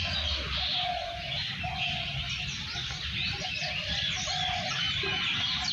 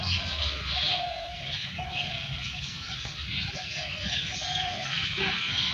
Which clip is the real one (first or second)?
first